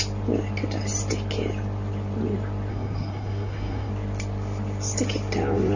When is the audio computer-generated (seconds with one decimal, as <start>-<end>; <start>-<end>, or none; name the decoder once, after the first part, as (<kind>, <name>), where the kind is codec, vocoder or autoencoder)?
2.7-3.9 (codec, SNAC)